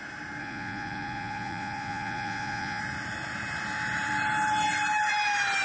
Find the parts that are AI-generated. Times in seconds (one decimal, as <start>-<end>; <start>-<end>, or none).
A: 0.4-2.8